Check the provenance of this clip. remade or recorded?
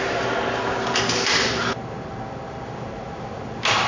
recorded